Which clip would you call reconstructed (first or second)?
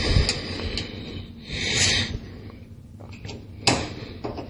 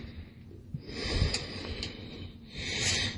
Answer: second